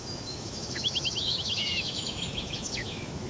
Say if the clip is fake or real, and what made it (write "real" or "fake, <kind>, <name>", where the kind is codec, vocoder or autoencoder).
fake, autoencoder, DAC-VAE